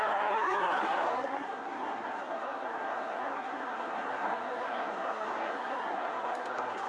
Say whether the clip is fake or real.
fake